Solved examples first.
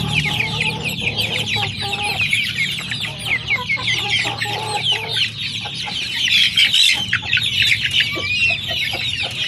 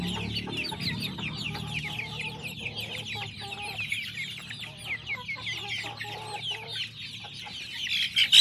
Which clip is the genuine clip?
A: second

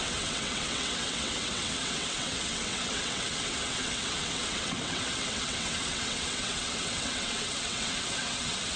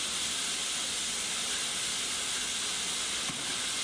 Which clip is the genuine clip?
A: second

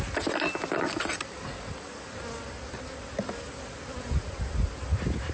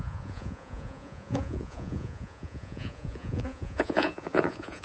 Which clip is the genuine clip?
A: first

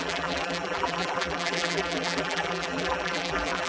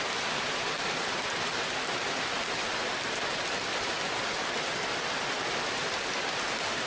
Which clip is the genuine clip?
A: second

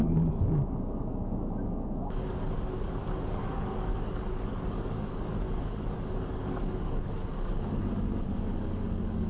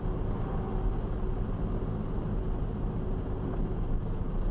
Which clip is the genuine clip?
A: second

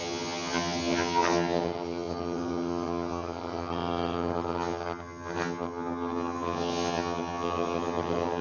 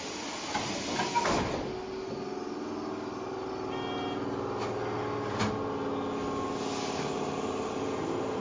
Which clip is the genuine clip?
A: second